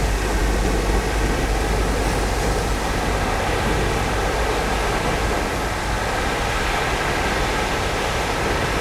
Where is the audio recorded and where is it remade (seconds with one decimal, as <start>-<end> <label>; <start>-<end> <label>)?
0.0-8.8 recorded